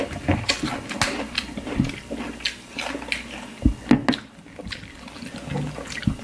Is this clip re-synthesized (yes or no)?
no